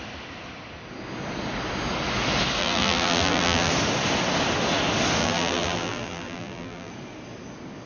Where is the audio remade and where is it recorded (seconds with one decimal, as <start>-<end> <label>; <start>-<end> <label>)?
0.0-2.6 recorded; 2.6-3.7 remade; 3.7-5.2 recorded; 5.2-6.9 remade; 6.9-7.9 recorded